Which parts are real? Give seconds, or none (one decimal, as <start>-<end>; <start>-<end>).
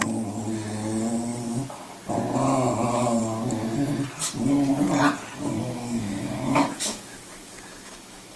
0.0-5.6